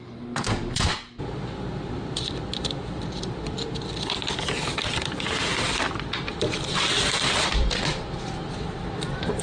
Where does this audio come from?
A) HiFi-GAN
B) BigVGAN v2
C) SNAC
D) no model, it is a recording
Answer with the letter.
B